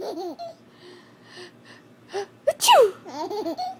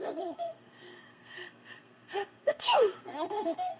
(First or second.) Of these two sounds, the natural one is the first